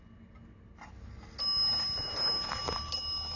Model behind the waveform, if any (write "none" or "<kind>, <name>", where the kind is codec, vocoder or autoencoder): none